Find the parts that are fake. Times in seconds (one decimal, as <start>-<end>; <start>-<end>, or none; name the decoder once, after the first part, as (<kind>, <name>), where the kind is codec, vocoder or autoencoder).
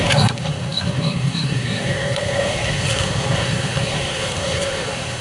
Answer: 0.0-5.2 (codec, SNAC)